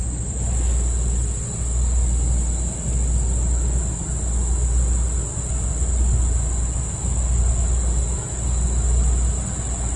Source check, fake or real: real